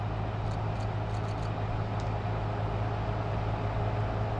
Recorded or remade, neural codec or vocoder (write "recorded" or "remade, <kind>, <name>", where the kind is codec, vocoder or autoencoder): recorded